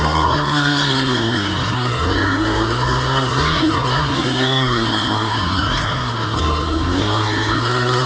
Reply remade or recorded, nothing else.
remade